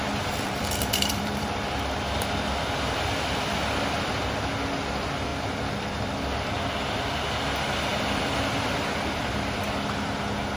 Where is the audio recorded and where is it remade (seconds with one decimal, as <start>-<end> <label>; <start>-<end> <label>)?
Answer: 0.0-1.5 remade; 1.5-5.3 recorded; 5.3-6.7 remade; 6.7-7.9 recorded; 7.9-9.3 remade; 9.3-10.6 recorded